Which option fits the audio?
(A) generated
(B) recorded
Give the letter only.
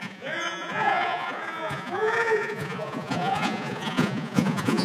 A